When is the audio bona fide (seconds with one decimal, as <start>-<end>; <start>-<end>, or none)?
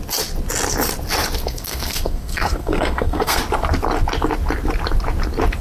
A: 0.0-1.4; 3.4-5.6